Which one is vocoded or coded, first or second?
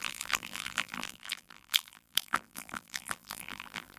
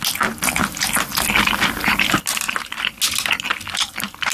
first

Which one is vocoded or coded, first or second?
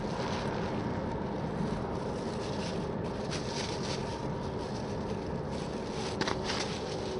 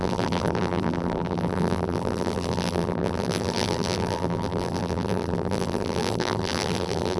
second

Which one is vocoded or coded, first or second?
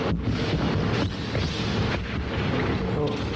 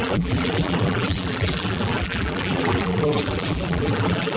second